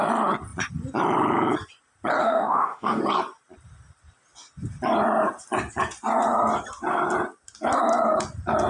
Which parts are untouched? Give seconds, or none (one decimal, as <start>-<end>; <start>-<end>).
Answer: 0.0-2.2; 3.0-8.7